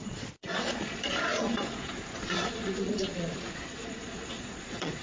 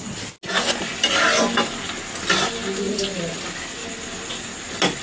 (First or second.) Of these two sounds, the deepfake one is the first